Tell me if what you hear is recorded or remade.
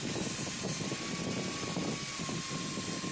recorded